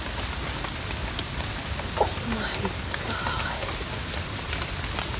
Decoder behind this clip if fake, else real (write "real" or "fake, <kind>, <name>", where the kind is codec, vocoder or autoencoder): real